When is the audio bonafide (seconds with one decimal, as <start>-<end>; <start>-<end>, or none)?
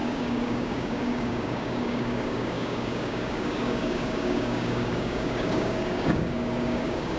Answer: none